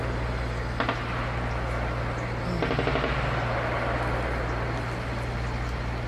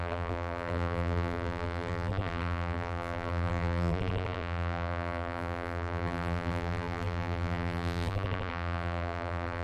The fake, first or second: second